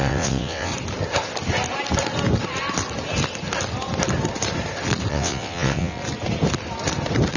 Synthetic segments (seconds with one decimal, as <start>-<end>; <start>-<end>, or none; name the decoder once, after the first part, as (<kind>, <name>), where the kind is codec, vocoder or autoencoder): 0.0-0.7 (vocoder, WaveNeXt); 5.1-6.0